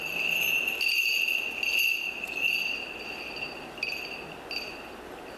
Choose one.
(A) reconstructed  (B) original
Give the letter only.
B